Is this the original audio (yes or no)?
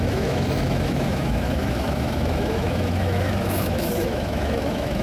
no